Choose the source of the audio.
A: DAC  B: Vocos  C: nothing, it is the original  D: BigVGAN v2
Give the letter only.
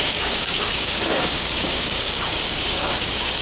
A